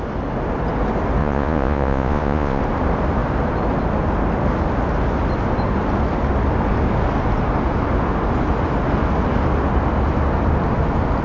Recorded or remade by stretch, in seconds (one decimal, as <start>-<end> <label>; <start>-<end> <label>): 0.0-1.2 recorded; 1.2-2.6 remade; 2.6-11.2 recorded